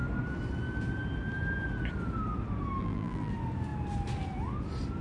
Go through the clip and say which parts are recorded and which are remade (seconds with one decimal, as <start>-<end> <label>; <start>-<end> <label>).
0.0-2.8 recorded; 2.8-3.3 remade; 3.3-5.0 recorded